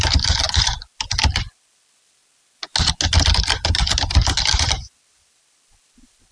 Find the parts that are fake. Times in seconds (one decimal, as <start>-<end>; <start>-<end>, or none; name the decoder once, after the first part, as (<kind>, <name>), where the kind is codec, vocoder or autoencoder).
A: 0.0-2.2 (vocoder, BigVGAN v2); 4.4-6.3